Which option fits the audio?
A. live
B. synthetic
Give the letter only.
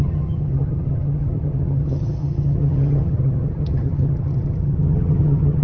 B